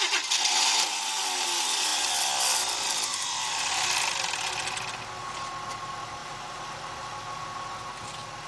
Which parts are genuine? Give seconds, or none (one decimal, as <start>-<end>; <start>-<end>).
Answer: 0.0-6.2; 6.8-8.5